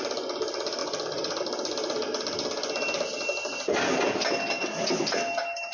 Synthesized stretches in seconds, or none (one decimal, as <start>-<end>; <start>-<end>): 0.8-1.4